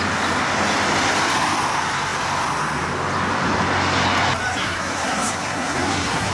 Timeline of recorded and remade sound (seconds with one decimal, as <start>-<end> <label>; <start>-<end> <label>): 0.0-4.6 recorded; 4.6-6.3 remade